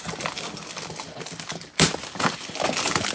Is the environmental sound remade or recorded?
recorded